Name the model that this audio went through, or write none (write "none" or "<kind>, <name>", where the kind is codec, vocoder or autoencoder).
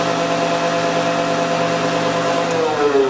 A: none